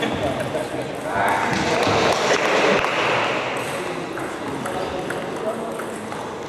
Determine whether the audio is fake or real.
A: real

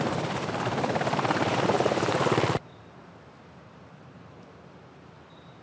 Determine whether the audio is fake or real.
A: fake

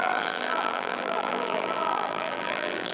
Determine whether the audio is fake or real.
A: fake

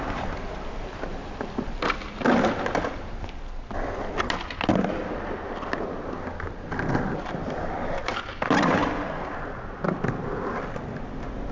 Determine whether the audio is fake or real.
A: real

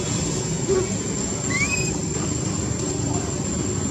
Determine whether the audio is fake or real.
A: real